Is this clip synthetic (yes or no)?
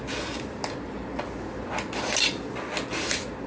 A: no